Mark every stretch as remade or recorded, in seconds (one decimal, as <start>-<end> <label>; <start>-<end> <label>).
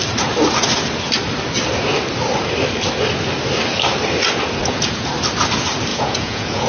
0.0-4.6 recorded; 4.6-5.1 remade; 5.1-5.9 recorded; 5.9-6.7 remade